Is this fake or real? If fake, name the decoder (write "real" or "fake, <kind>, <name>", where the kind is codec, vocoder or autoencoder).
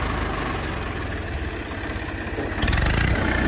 real